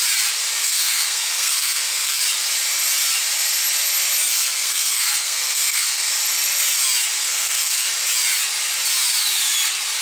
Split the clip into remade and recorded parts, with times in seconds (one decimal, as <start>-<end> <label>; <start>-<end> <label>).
0.0-0.6 recorded; 0.6-2.2 remade; 2.2-4.3 recorded; 4.3-6.1 remade; 6.1-7.2 recorded; 7.2-7.9 remade; 7.9-10.0 recorded